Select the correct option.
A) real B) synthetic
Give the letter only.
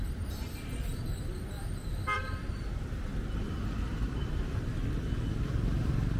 B